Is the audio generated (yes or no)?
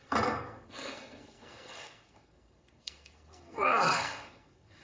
yes